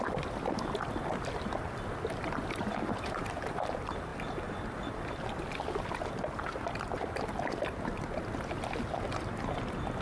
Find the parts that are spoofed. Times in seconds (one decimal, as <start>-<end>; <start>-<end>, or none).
0.0-10.0